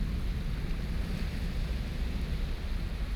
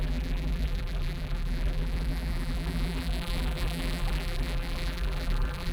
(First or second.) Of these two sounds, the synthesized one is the second